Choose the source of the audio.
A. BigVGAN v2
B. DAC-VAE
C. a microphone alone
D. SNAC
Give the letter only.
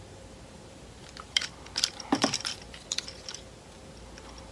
A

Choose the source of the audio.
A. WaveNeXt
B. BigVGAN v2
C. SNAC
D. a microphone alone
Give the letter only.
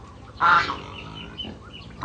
D